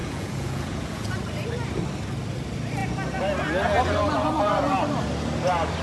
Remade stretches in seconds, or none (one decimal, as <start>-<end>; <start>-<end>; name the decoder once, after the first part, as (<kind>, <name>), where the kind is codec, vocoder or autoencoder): 0.0-1.1 (vocoder, Vocos)